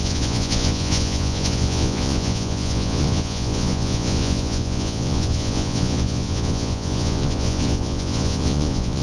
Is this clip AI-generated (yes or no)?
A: yes